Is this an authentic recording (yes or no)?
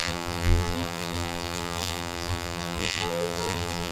no